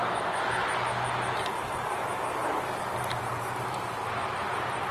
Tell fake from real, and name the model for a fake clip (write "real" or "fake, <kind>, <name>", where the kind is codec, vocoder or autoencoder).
real